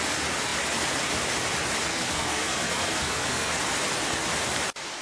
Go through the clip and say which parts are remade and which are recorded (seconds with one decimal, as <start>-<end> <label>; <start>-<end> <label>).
0.0-1.9 recorded; 1.9-3.6 remade; 3.6-5.0 recorded